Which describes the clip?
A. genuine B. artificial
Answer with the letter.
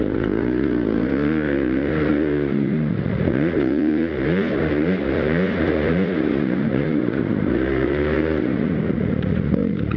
B